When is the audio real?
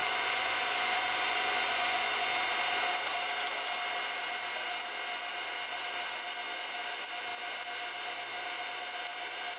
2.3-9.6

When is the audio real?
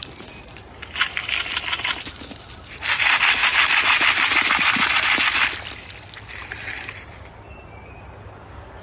0.0-8.8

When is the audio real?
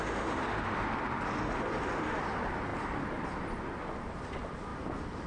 0.0-2.7; 3.8-4.7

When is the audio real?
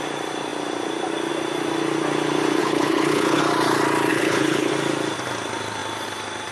0.0-2.6; 3.4-4.1; 4.7-6.5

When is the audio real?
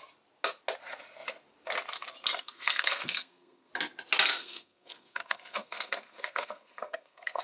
0.0-2.3; 3.7-4.4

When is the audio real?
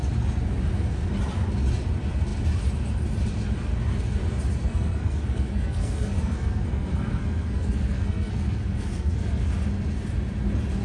0.0-4.6; 9.5-10.8